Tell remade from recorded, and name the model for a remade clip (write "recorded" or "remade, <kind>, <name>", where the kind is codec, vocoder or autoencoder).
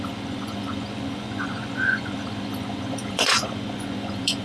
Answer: remade, vocoder, Vocos